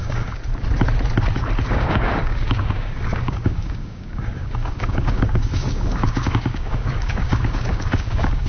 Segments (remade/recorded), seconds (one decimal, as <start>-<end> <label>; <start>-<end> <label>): 0.0-0.4 remade; 0.4-1.7 recorded; 1.7-8.5 remade